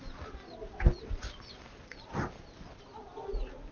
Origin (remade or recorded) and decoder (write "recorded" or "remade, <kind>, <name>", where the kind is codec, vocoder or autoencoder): recorded